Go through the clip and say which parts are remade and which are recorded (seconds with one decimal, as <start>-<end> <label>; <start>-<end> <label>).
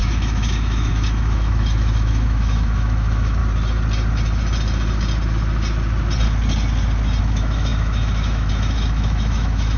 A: 0.0-3.4 remade; 3.4-7.2 recorded; 7.2-9.8 remade